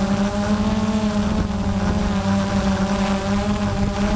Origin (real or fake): real